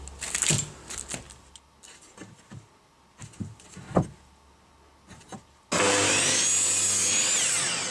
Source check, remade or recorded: recorded